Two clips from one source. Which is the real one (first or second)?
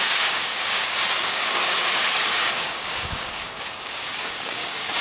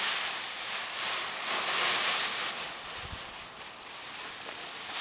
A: second